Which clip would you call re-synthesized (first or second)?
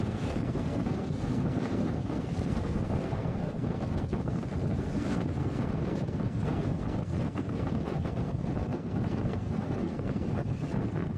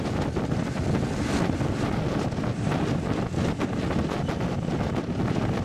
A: first